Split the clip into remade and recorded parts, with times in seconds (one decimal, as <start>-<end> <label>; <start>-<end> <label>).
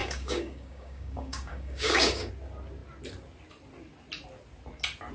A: 0.0-2.3 remade; 2.3-5.1 recorded